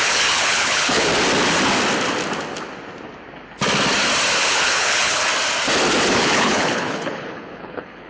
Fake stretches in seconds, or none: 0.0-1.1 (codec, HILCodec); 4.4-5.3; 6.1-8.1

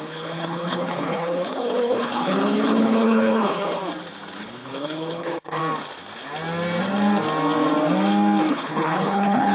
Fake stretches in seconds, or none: 0.0-3.8 (codec, HILCodec); 4.4-5.6; 8.5-9.5

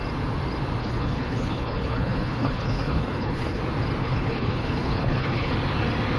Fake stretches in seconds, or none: 0.8-3.6 (codec, HILCodec); 4.0-5.5

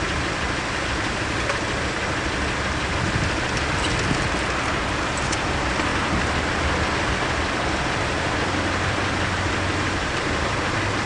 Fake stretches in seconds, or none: none